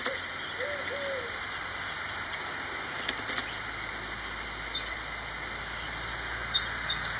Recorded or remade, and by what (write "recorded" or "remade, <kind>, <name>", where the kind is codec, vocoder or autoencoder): recorded